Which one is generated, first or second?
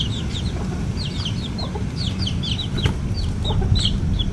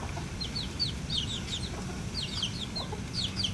first